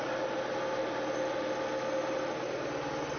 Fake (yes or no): no